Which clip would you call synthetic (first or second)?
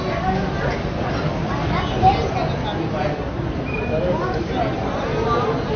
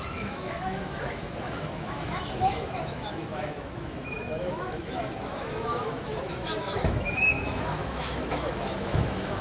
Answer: second